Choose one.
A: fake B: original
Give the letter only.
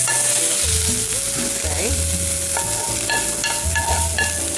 B